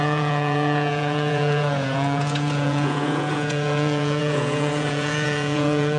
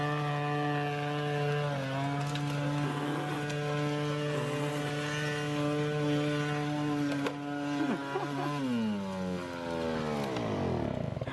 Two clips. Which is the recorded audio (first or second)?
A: second